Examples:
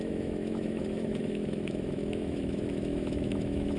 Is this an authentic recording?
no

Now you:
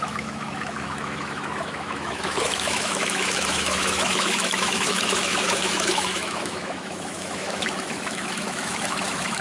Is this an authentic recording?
no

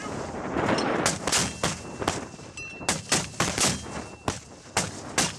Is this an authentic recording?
yes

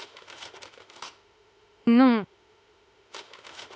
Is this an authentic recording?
no